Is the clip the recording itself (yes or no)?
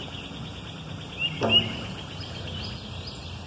yes